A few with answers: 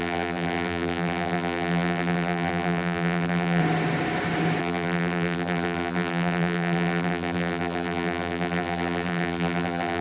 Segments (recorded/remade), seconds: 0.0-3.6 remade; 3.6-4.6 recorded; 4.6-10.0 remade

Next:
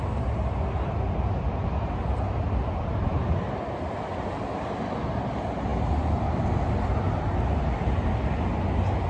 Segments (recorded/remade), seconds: 0.0-9.1 recorded

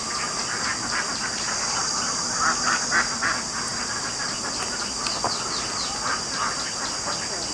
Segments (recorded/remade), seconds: 0.0-7.5 recorded

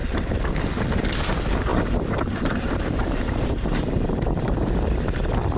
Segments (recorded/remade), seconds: 0.0-0.6 remade; 0.6-1.7 recorded; 1.7-5.1 remade; 5.1-5.6 recorded

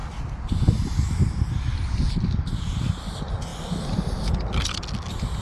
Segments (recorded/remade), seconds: 0.0-5.4 recorded